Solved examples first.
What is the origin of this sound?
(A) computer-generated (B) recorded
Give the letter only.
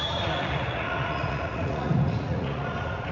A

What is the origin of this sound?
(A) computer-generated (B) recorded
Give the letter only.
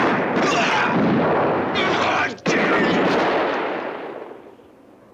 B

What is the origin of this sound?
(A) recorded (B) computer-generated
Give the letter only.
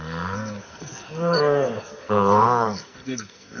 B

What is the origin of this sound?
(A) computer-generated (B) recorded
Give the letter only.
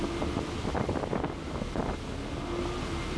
B